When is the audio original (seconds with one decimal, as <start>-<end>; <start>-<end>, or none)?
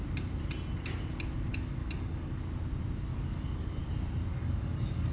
0.0-1.5; 2.4-3.1; 3.8-4.3